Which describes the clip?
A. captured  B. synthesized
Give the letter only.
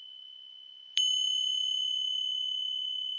A